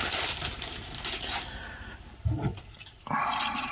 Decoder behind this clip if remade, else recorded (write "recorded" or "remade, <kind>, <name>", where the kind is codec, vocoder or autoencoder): recorded